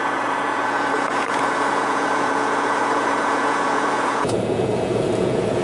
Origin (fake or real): fake